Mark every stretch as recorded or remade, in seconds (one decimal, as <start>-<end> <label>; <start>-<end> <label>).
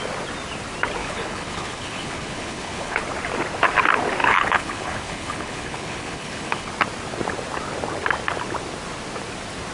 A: 0.0-1.0 recorded; 1.0-3.0 remade; 3.0-4.2 recorded; 4.2-6.7 remade; 6.7-9.7 recorded